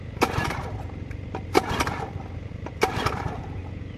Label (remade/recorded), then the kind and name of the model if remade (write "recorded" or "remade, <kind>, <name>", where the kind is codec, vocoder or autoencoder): recorded